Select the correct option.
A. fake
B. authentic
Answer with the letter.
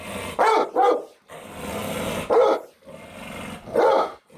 B